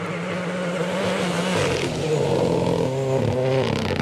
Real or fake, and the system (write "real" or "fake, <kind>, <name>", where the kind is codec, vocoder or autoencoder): real